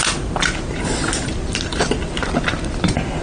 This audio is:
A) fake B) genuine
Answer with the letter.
B